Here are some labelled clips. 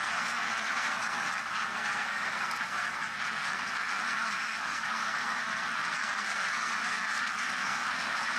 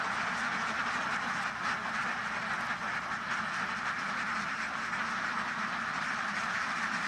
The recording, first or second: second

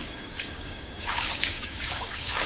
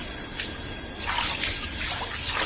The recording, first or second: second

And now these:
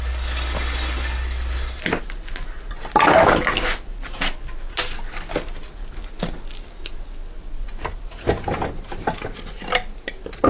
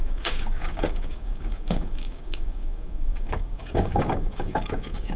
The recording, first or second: first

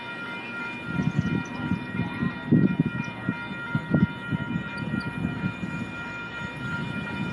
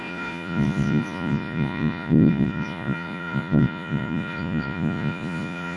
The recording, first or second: first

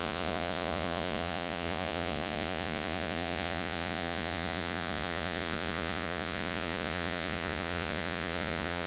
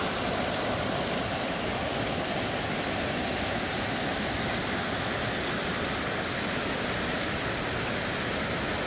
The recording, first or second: second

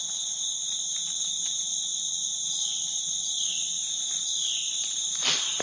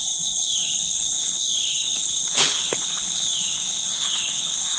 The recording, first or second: first